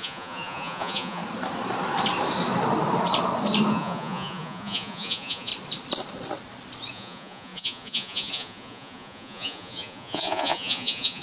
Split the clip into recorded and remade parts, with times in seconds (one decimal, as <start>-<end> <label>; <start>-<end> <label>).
0.0-1.2 remade; 1.2-3.7 recorded; 3.7-5.5 remade; 5.5-6.9 recorded; 6.9-11.2 remade